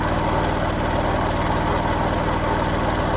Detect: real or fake real